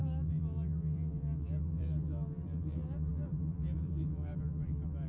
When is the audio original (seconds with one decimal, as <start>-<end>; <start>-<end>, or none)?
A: none